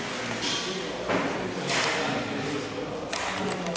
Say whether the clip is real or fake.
real